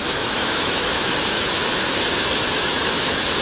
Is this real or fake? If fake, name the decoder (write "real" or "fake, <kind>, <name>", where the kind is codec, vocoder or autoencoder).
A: fake, autoencoder, DAC-VAE